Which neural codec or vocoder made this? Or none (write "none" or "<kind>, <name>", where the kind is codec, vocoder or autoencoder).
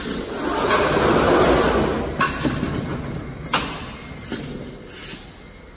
none